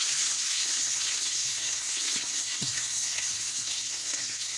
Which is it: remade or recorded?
remade